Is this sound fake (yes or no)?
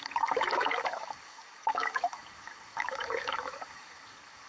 yes